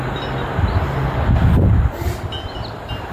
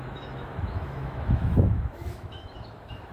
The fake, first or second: second